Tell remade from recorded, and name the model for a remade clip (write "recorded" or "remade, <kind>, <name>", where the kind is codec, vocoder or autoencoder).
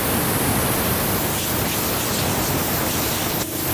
recorded